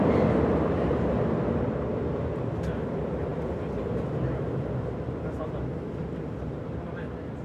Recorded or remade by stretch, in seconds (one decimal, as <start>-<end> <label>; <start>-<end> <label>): 0.0-7.4 recorded